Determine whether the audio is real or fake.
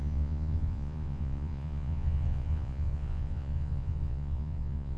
fake